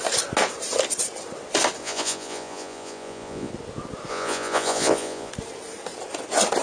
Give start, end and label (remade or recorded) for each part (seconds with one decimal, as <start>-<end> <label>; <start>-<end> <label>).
0.0-1.8 recorded; 1.8-3.5 remade; 3.5-4.1 recorded; 4.1-5.3 remade; 5.3-6.6 recorded